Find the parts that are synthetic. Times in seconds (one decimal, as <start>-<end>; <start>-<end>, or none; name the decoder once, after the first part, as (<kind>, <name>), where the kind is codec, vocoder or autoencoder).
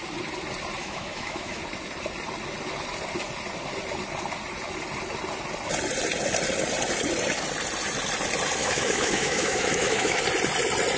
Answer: 0.8-1.6 (autoencoder, DAC-VAE); 8.6-10.2